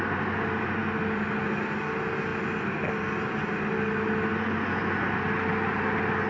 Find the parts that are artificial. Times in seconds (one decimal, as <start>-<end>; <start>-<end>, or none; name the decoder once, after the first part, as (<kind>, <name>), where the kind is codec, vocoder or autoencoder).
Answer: none